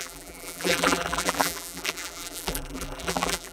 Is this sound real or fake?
fake